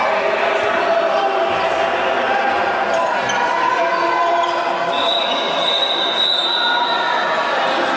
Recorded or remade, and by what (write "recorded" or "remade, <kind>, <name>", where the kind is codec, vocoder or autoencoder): recorded